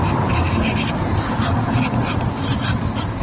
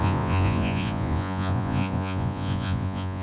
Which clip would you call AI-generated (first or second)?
second